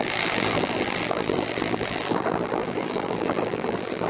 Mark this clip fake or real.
fake